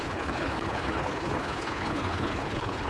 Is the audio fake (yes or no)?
yes